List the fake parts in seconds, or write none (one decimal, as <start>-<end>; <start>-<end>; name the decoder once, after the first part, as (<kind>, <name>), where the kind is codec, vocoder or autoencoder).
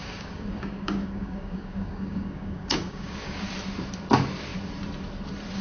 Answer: 0.0-3.4 (codec, DAC)